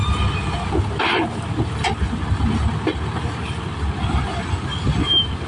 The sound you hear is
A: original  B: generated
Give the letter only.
A